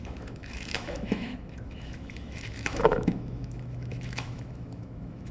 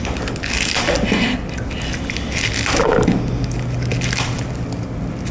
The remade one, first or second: first